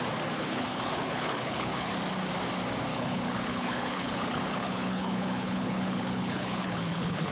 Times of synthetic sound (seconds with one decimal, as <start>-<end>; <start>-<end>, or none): 0.4-1.9; 2.9-7.3